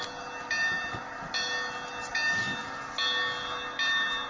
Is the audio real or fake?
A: real